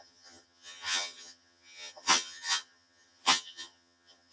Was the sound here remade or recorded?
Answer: remade